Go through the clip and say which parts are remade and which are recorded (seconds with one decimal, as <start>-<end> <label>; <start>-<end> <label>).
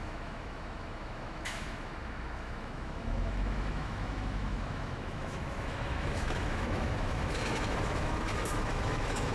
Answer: 0.0-9.3 remade